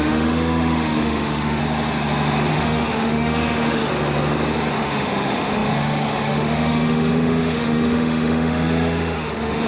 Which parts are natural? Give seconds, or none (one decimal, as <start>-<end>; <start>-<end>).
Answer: 1.6-2.5; 3.9-4.7